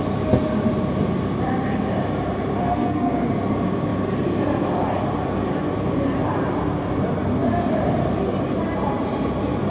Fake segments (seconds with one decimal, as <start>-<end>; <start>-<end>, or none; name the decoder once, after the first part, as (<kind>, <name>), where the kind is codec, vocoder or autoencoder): 2.6-3.3 (codec, SNAC)